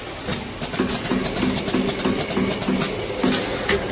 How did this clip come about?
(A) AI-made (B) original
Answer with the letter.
B